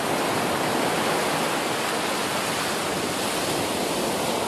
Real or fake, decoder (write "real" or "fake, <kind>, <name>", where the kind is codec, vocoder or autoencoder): real